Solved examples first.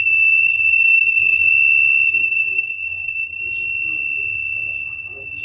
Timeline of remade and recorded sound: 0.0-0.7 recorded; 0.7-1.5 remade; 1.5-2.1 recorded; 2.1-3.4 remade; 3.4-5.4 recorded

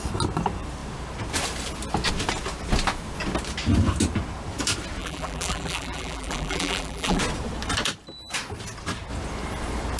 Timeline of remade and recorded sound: 0.0-5.0 recorded; 5.0-7.2 remade; 7.2-10.0 recorded

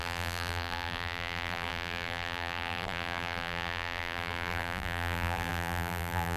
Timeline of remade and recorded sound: 0.0-6.4 remade

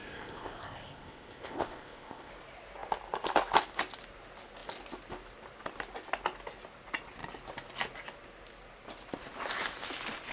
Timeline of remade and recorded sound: 0.0-2.3 remade; 2.3-10.3 recorded

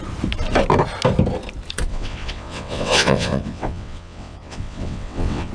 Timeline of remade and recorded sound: 0.0-1.9 recorded; 1.9-5.5 remade

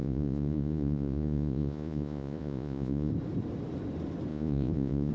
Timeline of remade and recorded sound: 0.0-3.1 remade; 3.1-4.3 recorded; 4.3-5.1 remade

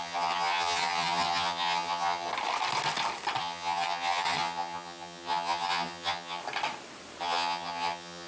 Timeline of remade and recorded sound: 0.0-2.3 remade; 2.3-3.4 recorded; 3.4-6.4 remade; 6.4-7.2 recorded; 7.2-8.3 remade